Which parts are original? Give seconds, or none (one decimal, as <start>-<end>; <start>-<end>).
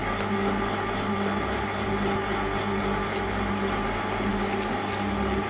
0.0-5.5